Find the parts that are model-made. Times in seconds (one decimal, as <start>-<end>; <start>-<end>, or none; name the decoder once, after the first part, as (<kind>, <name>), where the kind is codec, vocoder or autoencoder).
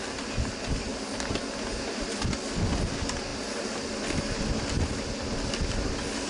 none